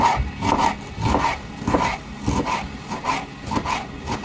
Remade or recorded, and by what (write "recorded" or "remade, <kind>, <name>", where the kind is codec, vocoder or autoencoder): recorded